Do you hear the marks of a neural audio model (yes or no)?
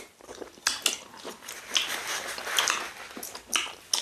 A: no